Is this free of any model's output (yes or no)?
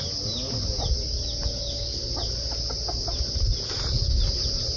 yes